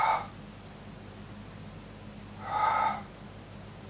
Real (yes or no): yes